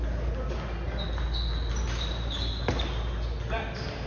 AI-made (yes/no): no